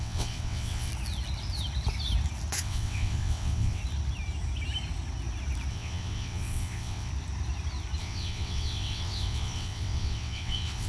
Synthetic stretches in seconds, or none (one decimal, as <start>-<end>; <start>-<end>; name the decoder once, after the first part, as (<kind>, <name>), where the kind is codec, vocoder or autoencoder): 0.0-0.9 (vocoder, WaveNeXt); 2.6-3.8; 5.7-7.1; 8.0-10.9